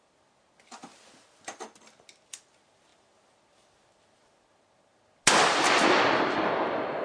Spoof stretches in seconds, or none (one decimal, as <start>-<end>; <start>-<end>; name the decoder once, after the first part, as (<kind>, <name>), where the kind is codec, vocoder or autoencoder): none